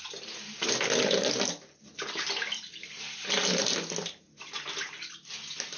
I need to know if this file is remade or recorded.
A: recorded